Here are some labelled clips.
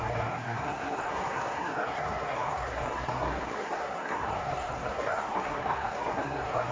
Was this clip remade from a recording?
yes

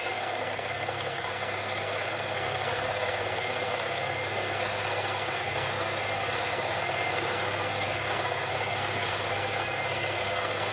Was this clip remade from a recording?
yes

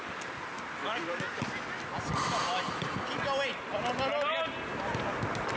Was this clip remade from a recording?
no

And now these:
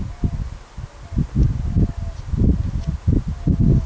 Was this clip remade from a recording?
no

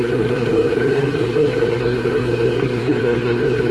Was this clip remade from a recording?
yes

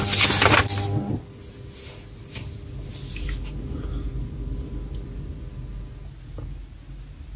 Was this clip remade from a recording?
no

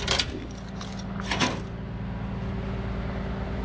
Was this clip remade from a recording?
no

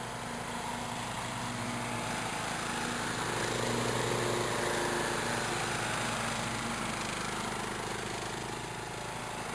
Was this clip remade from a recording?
no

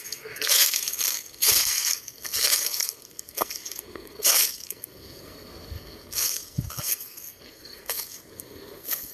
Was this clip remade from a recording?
yes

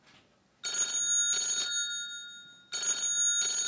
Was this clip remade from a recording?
no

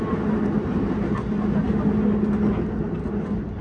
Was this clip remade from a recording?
no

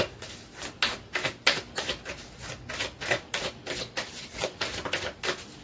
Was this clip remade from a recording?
no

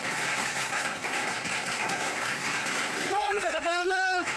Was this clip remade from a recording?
yes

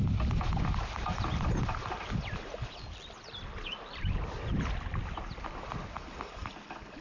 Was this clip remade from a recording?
no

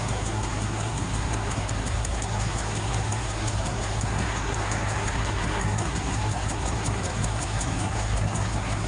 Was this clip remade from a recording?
yes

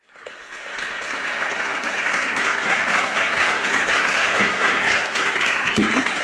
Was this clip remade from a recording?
yes